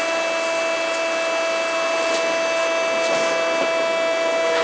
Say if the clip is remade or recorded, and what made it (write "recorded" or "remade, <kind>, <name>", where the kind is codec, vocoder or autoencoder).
recorded